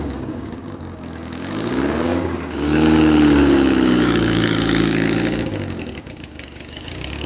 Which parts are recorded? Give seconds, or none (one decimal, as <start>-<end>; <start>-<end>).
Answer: none